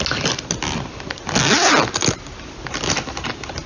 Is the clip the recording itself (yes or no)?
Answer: yes